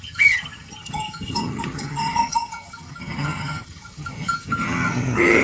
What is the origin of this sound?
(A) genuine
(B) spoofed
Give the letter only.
B